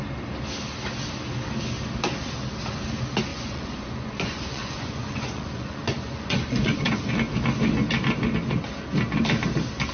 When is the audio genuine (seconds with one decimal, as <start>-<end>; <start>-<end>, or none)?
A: 0.0-3.3; 7.1-9.9